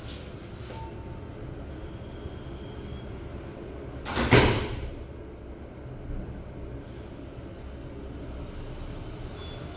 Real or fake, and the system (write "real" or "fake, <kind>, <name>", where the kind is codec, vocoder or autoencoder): real